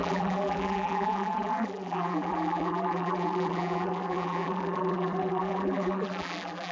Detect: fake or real fake